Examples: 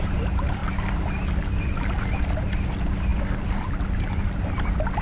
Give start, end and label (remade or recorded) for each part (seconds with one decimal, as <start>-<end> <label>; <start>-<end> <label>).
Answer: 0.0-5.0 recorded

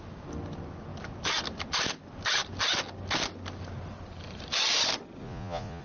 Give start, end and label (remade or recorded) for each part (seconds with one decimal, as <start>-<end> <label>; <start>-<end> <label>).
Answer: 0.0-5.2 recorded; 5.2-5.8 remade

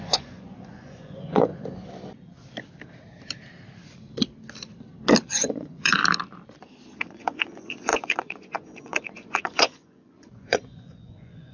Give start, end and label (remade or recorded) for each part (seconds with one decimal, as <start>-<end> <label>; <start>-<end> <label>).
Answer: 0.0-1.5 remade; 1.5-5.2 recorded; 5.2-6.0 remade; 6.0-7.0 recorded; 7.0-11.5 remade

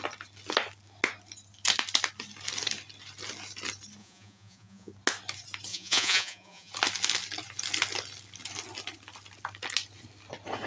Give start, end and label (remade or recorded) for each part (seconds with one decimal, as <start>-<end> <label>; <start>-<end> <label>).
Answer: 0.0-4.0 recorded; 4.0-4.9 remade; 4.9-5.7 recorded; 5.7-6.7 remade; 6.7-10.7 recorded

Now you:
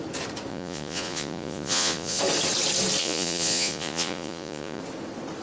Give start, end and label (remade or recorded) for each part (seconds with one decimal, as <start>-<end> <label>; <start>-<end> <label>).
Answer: 0.0-0.5 recorded; 0.5-2.2 remade; 2.2-3.0 recorded; 3.0-4.8 remade; 4.8-5.4 recorded